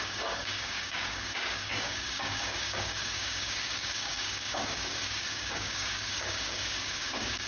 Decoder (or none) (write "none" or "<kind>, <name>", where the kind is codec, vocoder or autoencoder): codec, DAC